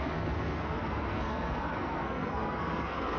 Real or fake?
fake